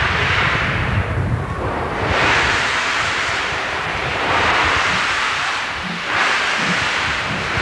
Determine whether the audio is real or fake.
fake